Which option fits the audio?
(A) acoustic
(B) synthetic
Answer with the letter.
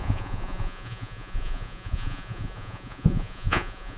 B